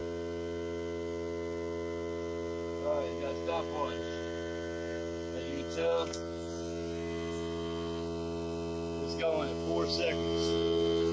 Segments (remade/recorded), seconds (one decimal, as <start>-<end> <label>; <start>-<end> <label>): 0.0-11.1 recorded